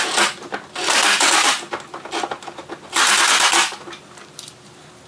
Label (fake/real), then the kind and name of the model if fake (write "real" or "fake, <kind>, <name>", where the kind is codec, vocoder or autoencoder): real